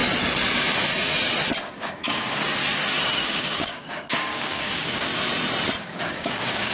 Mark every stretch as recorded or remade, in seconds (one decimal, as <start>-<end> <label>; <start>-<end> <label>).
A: 0.0-1.8 recorded; 1.8-2.4 remade; 2.4-3.2 recorded; 3.2-5.1 remade; 5.1-5.8 recorded; 5.8-6.7 remade